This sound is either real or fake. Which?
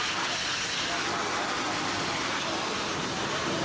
real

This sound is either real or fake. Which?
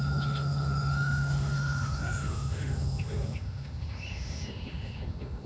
fake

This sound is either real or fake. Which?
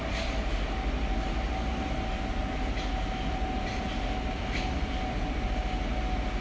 real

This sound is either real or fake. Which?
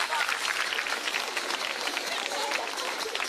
real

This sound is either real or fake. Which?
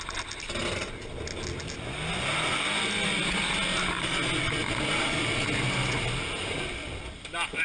real